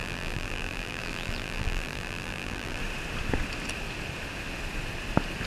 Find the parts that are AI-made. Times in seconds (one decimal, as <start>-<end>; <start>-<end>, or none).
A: 0.0-2.8